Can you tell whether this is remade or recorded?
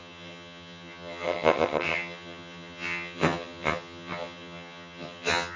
remade